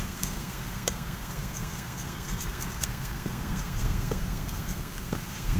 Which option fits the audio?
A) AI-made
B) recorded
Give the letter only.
A